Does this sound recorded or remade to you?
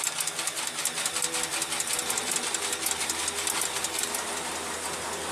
recorded